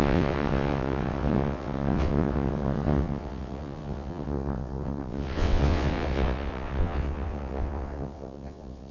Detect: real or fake fake